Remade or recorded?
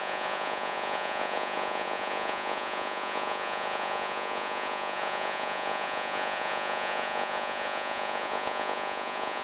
remade